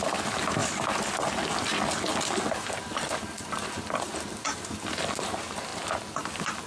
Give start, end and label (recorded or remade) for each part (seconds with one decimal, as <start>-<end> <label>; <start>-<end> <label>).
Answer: 0.0-6.7 recorded